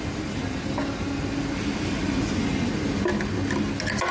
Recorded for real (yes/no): yes